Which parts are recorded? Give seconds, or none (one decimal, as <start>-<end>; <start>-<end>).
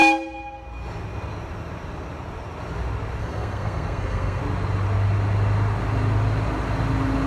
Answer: 0.0-3.2; 4.4-7.3